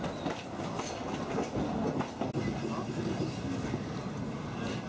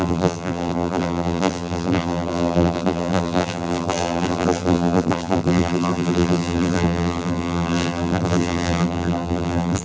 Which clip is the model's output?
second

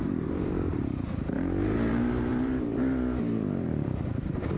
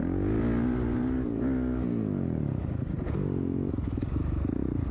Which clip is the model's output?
first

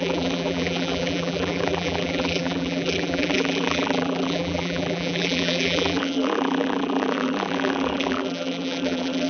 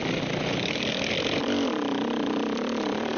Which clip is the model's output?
first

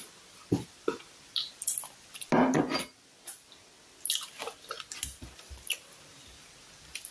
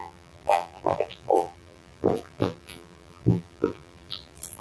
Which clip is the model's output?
second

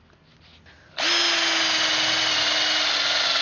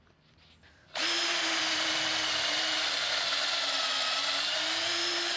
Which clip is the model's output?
second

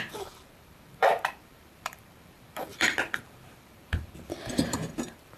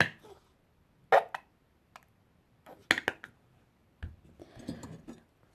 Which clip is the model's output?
first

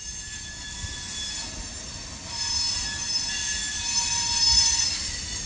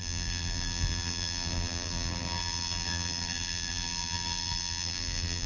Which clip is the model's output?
second